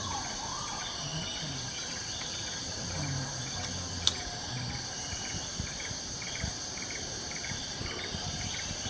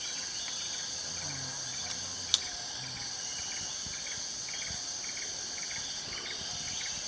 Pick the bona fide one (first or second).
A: second